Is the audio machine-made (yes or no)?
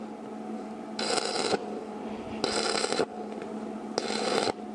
no